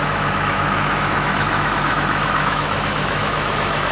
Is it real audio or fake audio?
fake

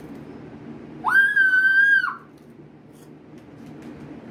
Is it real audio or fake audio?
real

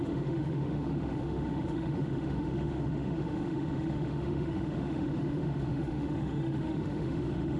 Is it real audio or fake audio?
fake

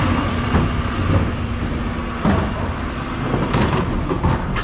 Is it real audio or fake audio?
real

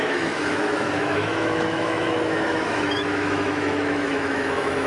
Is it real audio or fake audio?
fake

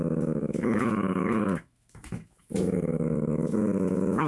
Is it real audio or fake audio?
fake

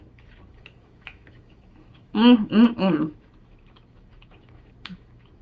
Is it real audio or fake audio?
fake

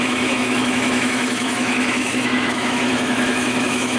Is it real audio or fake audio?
fake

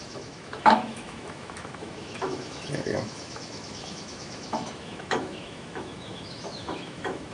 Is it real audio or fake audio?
fake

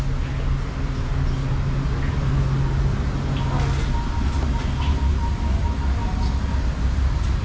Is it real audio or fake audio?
real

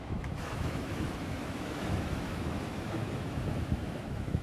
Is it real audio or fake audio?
fake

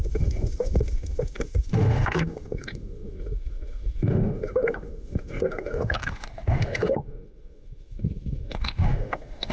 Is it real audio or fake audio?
fake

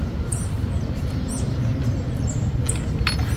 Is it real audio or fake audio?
real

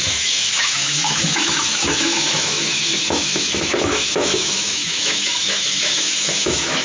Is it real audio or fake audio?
fake